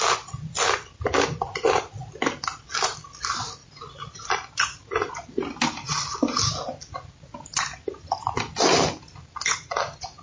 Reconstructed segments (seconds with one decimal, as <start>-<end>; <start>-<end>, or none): 3.6-5.1